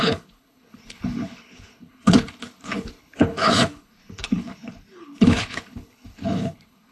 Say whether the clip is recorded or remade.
remade